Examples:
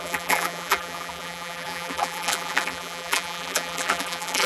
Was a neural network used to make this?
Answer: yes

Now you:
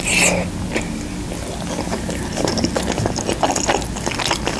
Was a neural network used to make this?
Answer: no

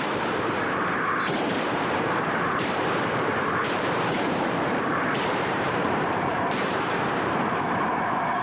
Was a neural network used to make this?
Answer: yes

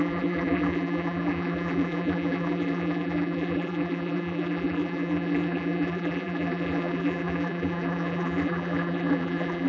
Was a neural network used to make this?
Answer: yes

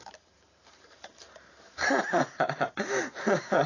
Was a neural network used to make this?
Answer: yes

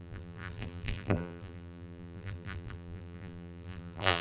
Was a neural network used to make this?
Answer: yes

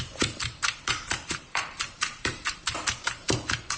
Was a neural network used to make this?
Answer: yes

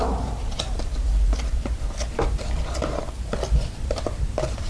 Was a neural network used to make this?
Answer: yes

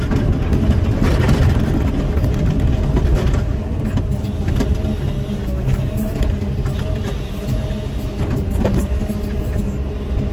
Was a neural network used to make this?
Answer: no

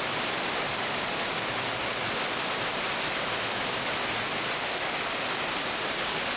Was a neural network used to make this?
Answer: no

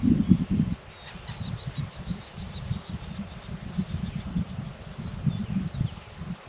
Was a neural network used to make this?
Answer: no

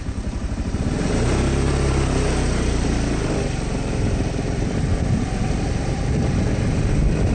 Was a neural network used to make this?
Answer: yes